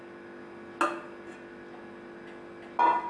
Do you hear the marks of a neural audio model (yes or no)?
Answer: no